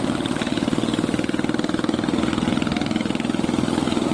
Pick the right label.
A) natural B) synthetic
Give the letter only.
A